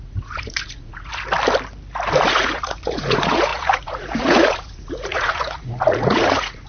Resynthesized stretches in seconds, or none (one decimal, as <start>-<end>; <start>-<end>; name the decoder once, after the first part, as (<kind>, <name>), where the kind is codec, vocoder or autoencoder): 0.0-1.1 (vocoder, Vocos); 2.1-6.7